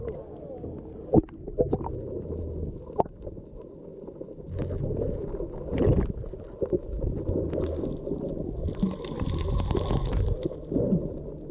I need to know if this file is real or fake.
real